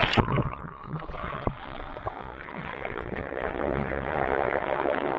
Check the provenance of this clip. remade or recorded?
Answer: remade